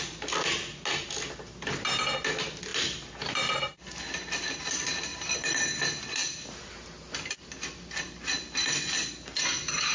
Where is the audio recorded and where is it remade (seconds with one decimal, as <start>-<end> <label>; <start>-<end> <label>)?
0.0-5.1 recorded; 5.1-5.6 remade; 5.6-9.9 recorded